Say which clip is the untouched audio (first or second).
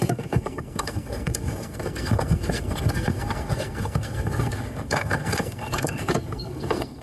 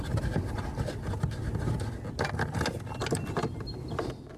second